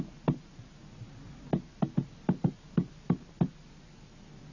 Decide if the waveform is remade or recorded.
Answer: recorded